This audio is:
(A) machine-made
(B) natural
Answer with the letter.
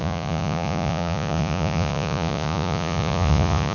A